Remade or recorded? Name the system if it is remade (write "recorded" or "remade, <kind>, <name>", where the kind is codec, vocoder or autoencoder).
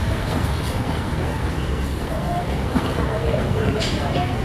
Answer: remade, codec, SNAC